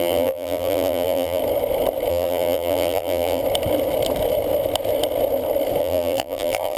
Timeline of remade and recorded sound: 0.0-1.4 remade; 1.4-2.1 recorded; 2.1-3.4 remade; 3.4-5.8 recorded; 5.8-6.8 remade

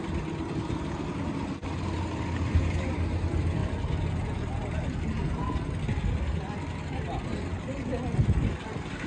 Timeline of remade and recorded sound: 0.0-9.1 recorded

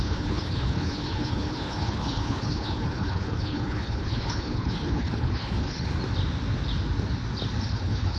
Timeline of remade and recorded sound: 0.0-5.9 remade; 5.9-7.7 recorded; 7.7-8.2 remade

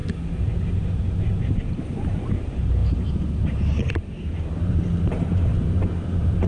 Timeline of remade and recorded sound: 0.0-1.8 recorded; 1.8-6.5 remade

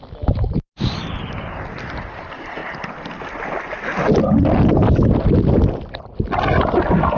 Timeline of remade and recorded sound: 0.0-7.2 recorded

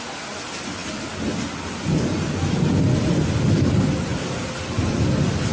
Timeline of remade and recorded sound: 0.0-5.5 recorded

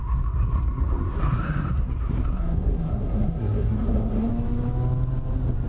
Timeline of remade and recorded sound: 0.0-4.3 remade; 4.3-5.7 recorded

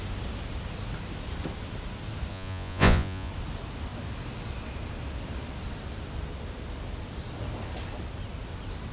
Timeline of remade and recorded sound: 0.0-2.3 recorded; 2.3-3.3 remade; 3.3-8.9 recorded